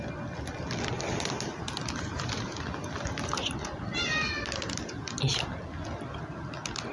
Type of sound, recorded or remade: recorded